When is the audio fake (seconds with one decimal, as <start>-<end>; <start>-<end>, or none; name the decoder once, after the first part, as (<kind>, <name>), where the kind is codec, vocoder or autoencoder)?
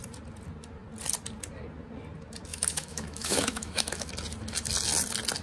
2.5-4.1 (autoencoder, DAC-VAE)